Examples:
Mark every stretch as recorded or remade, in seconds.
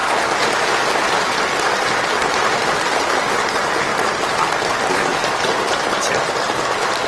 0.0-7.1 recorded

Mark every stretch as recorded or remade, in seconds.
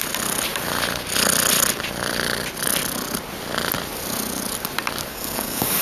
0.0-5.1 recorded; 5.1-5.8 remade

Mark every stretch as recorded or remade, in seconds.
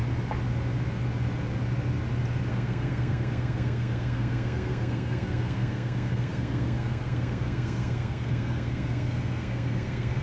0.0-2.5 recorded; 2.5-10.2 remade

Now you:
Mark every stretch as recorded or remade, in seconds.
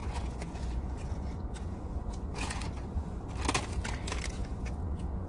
0.0-3.2 remade; 3.2-4.4 recorded; 4.4-5.3 remade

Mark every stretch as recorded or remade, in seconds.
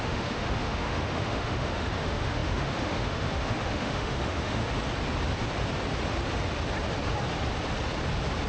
0.0-4.6 remade; 4.6-8.5 recorded